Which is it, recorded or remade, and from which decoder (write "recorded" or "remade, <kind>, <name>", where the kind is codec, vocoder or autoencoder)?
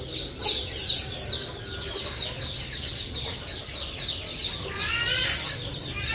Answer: recorded